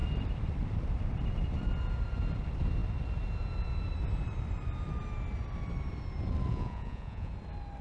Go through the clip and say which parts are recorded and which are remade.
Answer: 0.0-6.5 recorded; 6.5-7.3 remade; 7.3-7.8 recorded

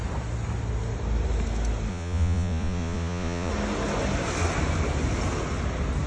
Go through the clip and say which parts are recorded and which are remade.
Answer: 0.0-1.9 recorded; 1.9-3.5 remade; 3.5-6.1 recorded

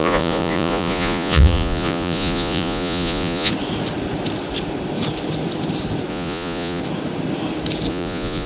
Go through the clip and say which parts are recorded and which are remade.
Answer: 0.0-3.5 remade; 3.5-6.1 recorded; 6.1-6.8 remade; 6.8-7.9 recorded; 7.9-8.5 remade

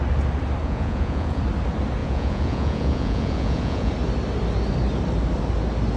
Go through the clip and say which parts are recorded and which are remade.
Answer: 0.0-0.6 recorded; 0.6-1.4 remade; 1.4-2.0 recorded; 2.0-3.9 remade; 3.9-6.0 recorded

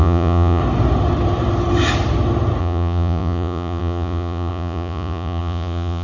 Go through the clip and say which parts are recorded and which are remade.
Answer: 0.0-0.6 remade; 0.6-2.6 recorded; 2.6-6.0 remade

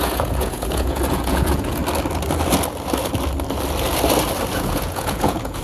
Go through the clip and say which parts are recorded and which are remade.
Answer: 0.0-1.8 remade; 1.8-4.5 recorded; 4.5-5.6 remade

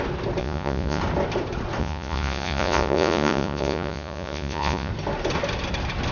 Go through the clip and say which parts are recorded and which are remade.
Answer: 0.0-0.4 recorded; 0.4-1.0 remade; 1.0-1.8 recorded; 1.8-4.9 remade; 4.9-6.1 recorded

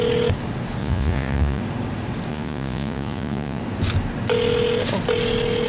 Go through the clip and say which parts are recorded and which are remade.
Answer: 0.0-0.8 recorded; 0.8-1.6 remade; 1.6-2.3 recorded; 2.3-3.6 remade; 3.6-5.7 recorded